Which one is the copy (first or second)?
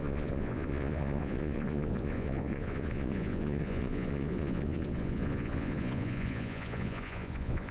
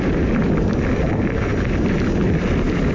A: first